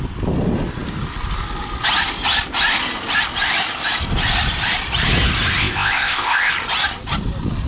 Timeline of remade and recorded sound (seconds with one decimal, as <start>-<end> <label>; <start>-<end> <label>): 0.0-5.6 recorded; 5.6-6.5 remade; 6.5-7.7 recorded